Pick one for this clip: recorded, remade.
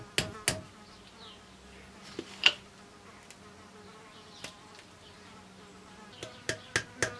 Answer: recorded